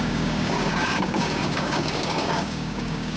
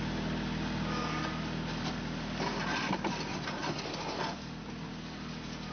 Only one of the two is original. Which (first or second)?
second